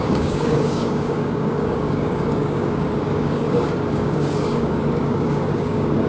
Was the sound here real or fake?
fake